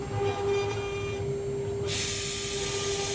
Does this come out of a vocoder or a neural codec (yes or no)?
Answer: no